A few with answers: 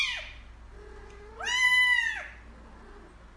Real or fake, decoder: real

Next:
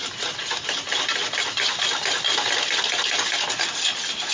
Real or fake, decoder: real